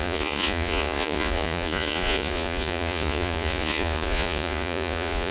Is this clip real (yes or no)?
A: no